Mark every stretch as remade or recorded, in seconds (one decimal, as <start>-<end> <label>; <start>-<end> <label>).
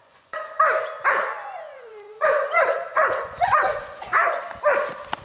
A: 0.0-0.6 remade; 0.6-1.3 recorded; 1.3-4.4 remade; 4.4-5.2 recorded